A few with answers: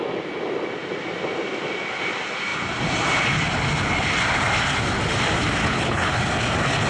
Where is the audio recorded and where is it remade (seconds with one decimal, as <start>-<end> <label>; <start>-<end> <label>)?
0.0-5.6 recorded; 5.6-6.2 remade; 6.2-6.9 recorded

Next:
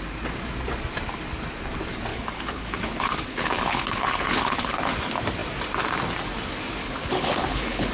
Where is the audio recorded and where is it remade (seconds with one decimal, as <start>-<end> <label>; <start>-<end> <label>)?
0.0-2.1 recorded; 2.1-4.8 remade; 4.8-6.8 recorded; 6.8-7.9 remade

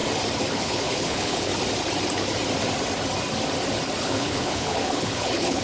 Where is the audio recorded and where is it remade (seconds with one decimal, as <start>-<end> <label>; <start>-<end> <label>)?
0.0-0.5 recorded; 0.5-1.5 remade; 1.5-4.0 recorded; 4.0-5.6 remade

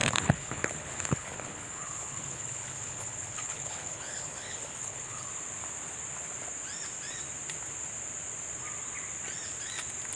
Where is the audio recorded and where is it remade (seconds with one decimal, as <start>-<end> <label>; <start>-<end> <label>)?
0.0-5.3 remade; 5.3-10.2 recorded

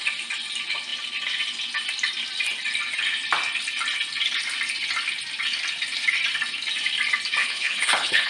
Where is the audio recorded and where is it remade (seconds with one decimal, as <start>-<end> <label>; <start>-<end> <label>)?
0.0-7.4 recorded; 7.4-8.3 remade